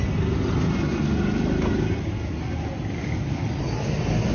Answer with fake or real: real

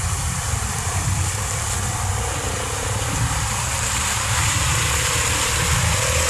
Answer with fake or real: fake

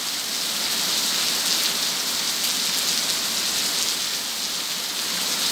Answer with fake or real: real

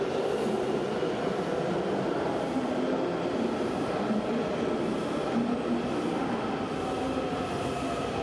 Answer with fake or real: real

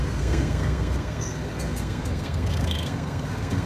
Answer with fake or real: fake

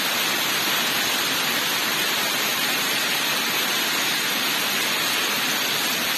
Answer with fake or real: fake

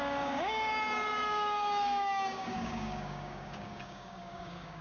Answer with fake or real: fake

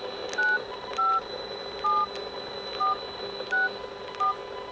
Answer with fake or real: real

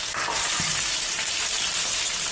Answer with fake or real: fake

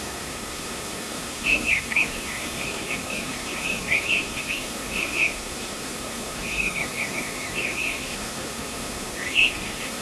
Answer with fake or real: fake